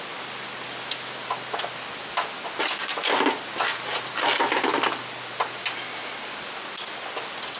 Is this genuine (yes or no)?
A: yes